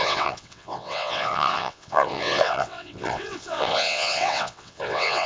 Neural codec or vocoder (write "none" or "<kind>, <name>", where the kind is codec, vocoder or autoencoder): vocoder, WaveNeXt